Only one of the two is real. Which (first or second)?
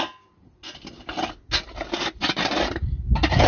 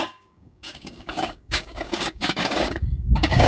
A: first